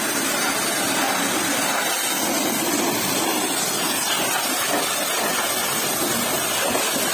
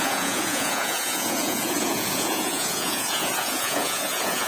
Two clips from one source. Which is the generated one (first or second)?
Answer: second